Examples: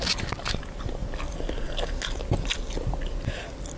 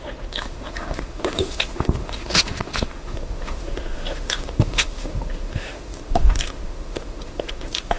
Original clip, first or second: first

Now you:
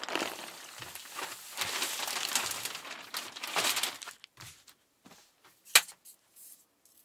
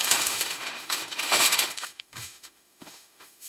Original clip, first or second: first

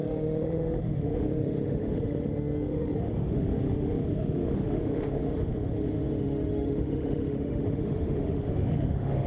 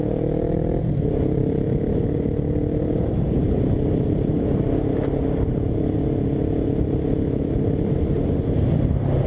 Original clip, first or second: second